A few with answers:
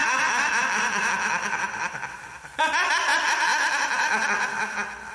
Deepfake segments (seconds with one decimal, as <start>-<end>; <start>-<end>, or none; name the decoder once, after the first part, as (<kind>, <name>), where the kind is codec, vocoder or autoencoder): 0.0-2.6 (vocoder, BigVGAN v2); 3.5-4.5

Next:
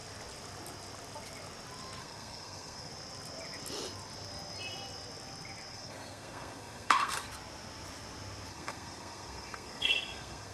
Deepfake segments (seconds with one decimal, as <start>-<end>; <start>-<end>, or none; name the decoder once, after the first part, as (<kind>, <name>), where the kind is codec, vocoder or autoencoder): 2.0-2.9 (codec, SNAC); 5.7-7.3; 8.5-10.5

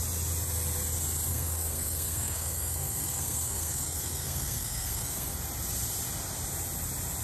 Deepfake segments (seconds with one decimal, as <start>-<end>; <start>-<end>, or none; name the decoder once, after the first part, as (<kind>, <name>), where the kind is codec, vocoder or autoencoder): 1.3-5.3 (codec, SNAC)

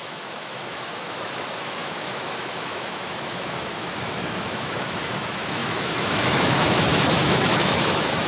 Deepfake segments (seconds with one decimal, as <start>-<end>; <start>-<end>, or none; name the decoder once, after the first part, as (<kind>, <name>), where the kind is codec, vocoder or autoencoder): 0.0-8.3 (autoencoder, DAC-VAE)

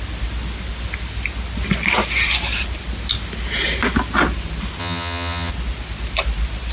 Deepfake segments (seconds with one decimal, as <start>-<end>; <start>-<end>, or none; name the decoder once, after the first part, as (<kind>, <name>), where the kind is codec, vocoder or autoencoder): 4.8-5.5 (vocoder, HiFi-GAN)

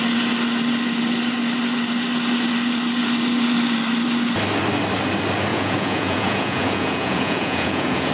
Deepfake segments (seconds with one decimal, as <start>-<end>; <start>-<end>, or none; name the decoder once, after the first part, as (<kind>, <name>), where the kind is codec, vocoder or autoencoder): 5.5-8.1 (vocoder, Vocos)